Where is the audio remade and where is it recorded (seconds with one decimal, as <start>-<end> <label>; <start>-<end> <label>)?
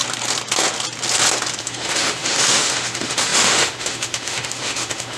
0.0-1.6 recorded; 1.6-5.2 remade